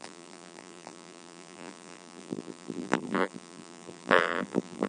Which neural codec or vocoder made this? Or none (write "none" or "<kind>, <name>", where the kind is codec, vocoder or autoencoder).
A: vocoder, BigVGAN v2